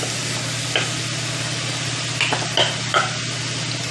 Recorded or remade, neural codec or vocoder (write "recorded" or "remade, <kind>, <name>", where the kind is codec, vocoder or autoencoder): recorded